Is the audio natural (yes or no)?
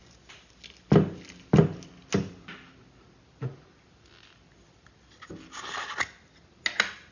yes